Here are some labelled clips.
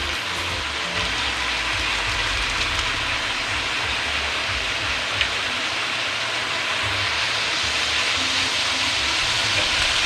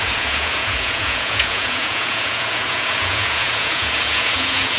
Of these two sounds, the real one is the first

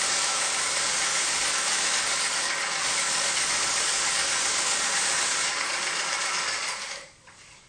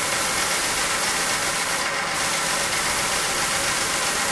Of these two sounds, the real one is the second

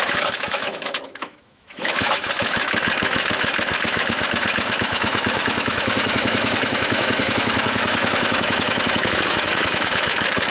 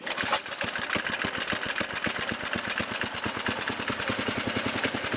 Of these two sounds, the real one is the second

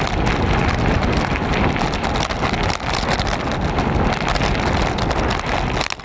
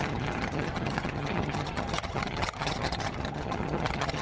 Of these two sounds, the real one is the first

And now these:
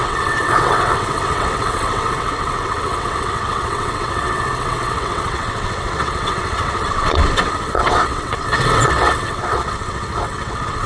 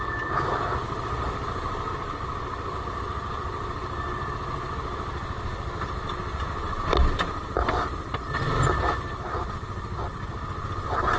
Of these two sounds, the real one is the second